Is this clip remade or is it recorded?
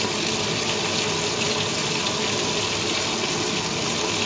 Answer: recorded